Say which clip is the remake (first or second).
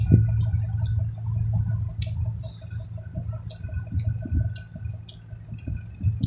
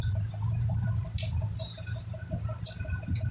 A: second